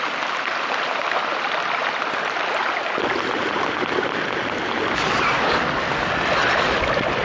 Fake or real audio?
real